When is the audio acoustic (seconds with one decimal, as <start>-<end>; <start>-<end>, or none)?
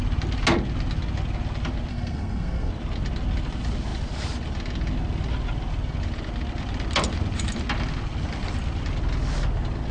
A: 0.0-1.9; 2.7-9.9